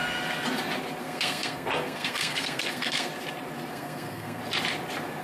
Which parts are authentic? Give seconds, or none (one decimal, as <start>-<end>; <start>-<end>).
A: 0.0-1.0; 3.1-3.7; 4.4-5.2